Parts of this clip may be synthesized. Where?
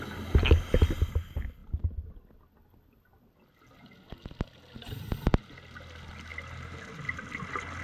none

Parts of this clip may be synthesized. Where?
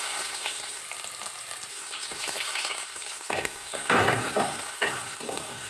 0.0-0.8 (codec, SNAC); 1.7-5.7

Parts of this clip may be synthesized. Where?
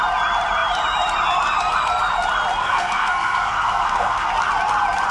2.6-4.3 (codec, SNAC)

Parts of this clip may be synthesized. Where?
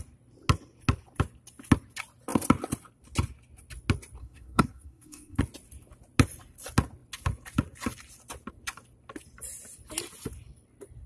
4.2-5.4 (codec, SNAC)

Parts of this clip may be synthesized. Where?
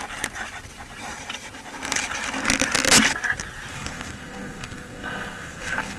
3.7-6.0 (codec, SNAC)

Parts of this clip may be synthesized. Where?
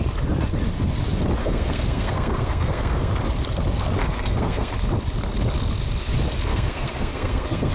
1.4-3.1 (codec, SNAC); 4.0-4.7; 6.5-7.7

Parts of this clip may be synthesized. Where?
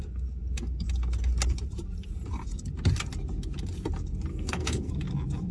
4.3-4.9 (codec, SNAC)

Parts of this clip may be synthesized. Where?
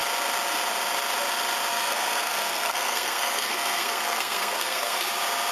1.7-5.0 (codec, SNAC)